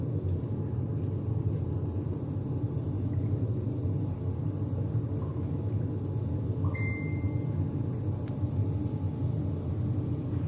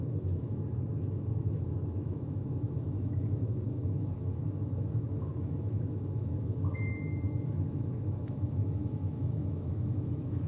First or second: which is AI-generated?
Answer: second